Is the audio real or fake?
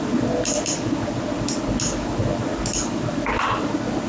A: real